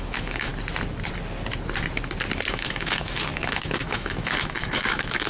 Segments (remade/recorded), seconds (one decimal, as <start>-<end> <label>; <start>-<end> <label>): 0.0-0.5 remade; 0.5-2.5 recorded; 2.5-5.3 remade